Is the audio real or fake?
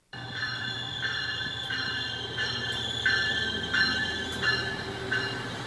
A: fake